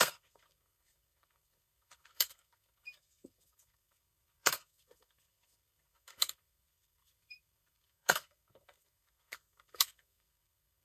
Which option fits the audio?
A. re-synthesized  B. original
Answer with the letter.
A